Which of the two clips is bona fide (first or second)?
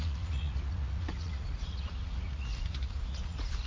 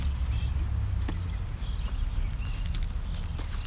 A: second